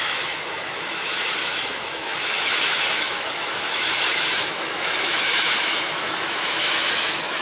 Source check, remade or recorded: remade